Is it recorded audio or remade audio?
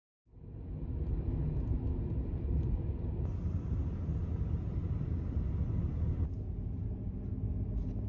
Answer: recorded